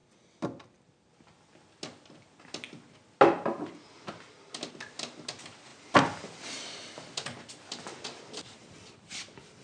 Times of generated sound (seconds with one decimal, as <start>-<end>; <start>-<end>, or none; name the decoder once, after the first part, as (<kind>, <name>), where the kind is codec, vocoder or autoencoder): none